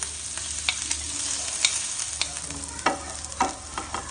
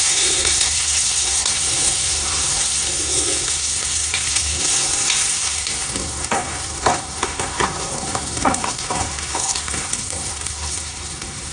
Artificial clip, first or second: second